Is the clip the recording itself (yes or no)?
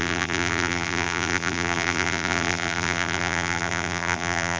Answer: no